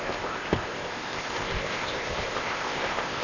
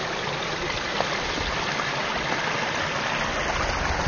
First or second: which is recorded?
second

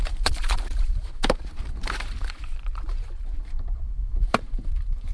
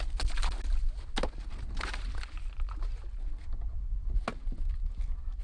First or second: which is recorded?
second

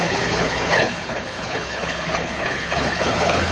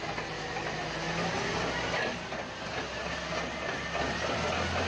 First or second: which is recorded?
second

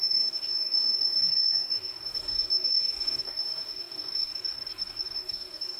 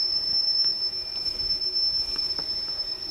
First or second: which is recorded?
second